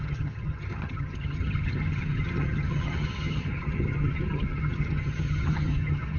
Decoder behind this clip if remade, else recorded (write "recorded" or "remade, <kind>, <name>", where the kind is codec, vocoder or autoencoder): remade, vocoder, HiFi-GAN